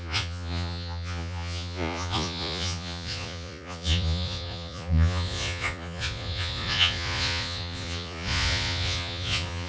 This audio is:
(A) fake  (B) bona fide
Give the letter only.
A